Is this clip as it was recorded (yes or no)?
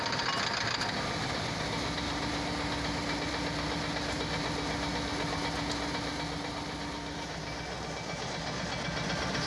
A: yes